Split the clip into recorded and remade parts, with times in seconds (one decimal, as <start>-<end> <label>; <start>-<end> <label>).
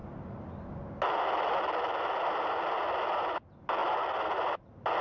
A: 0.0-5.0 recorded